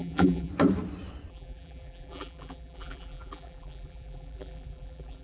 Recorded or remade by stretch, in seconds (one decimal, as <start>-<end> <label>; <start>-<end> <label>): 0.0-0.5 remade; 0.5-1.3 recorded; 1.3-5.2 remade